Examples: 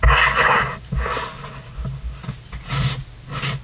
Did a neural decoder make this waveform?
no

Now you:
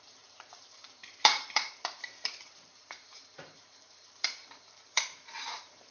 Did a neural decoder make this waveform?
yes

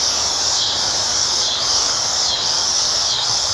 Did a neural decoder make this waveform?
yes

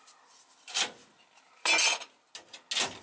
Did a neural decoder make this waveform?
no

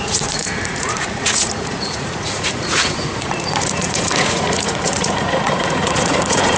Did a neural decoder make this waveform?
yes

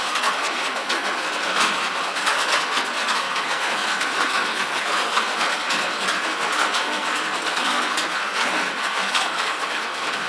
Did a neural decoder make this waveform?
yes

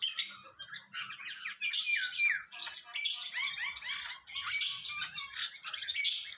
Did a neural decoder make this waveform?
no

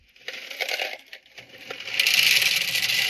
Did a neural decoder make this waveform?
no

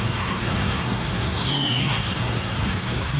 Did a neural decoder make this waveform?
yes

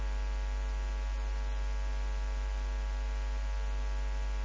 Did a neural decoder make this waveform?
no